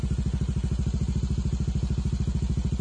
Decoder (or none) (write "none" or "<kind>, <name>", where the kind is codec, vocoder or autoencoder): none